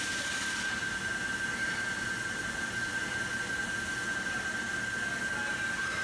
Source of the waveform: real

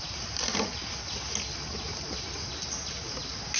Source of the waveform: real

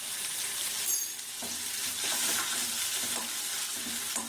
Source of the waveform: real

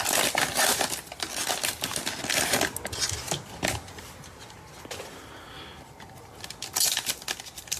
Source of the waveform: real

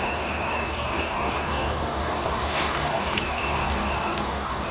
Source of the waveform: fake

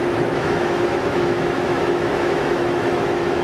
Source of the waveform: fake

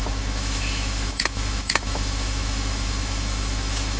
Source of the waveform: fake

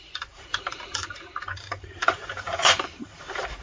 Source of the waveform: fake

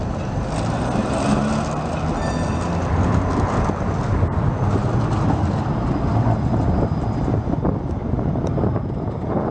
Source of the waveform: real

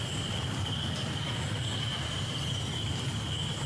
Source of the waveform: real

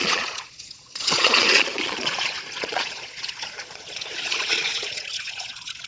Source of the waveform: fake